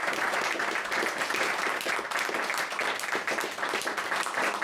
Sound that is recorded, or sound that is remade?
recorded